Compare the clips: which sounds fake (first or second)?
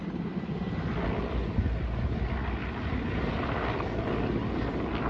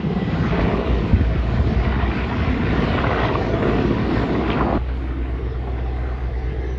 second